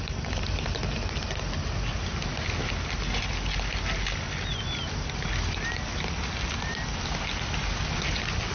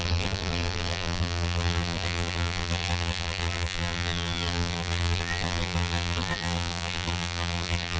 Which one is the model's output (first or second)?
second